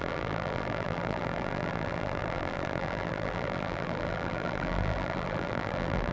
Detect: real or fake fake